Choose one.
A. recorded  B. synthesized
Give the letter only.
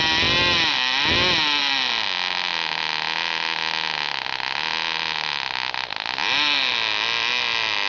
A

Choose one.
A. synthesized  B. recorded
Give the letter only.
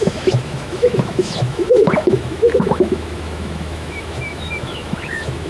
A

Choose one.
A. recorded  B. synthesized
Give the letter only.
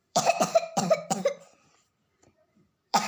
B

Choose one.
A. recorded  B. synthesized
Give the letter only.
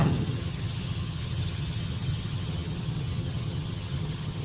B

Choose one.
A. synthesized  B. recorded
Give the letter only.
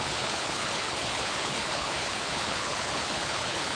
A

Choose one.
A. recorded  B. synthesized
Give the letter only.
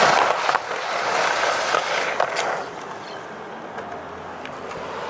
A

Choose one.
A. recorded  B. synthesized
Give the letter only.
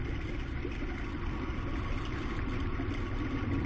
A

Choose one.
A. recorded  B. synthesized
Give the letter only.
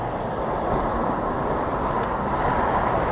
A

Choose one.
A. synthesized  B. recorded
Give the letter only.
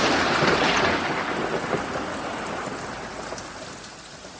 B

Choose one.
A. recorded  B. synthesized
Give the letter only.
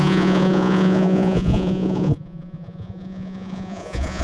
B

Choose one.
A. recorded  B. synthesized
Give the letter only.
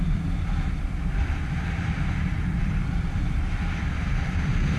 B